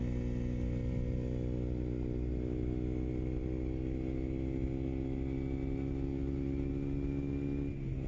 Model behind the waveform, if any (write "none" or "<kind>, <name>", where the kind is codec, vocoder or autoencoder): none